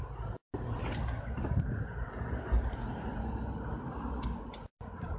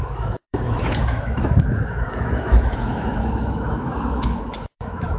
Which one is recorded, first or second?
first